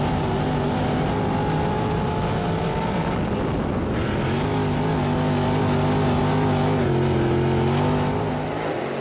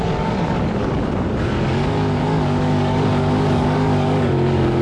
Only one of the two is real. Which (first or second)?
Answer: first